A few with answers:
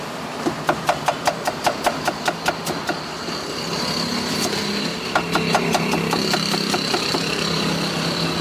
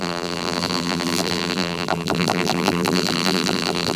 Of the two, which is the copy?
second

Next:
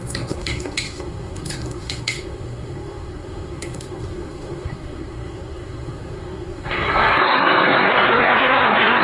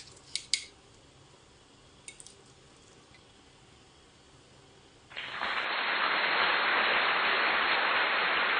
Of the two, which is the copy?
first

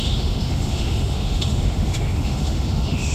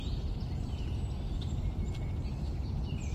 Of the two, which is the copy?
first